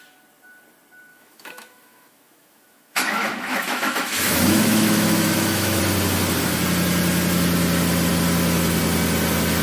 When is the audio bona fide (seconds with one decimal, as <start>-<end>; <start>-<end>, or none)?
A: 0.0-1.1; 5.8-9.6